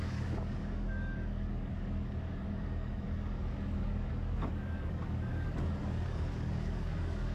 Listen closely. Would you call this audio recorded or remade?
remade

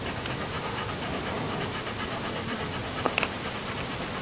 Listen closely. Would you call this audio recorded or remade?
recorded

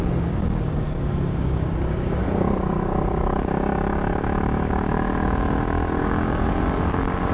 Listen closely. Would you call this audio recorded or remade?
remade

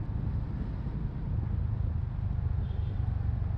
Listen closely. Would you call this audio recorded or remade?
recorded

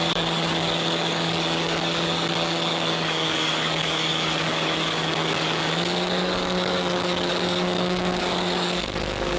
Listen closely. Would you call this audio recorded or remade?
remade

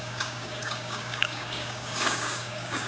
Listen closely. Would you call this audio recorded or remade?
remade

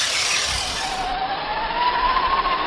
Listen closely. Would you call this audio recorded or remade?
recorded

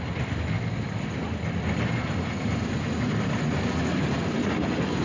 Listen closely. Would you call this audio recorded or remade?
recorded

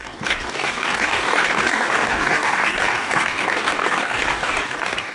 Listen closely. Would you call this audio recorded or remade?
remade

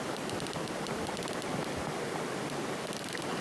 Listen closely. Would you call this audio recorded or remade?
recorded